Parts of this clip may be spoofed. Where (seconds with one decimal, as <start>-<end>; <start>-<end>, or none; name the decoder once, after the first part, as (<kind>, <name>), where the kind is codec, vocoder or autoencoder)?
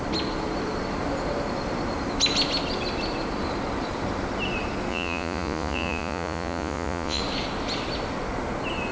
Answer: 4.9-7.2 (vocoder, Vocos)